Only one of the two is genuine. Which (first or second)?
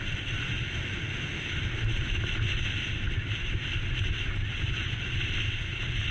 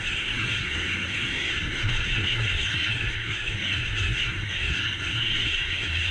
first